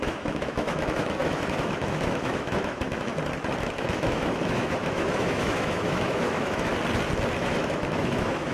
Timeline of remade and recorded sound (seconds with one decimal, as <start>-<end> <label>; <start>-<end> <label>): 0.0-3.1 remade; 3.1-3.6 recorded; 3.6-6.7 remade; 6.7-7.4 recorded; 7.4-8.5 remade